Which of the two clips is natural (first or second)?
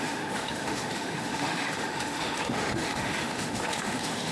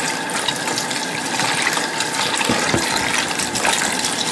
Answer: second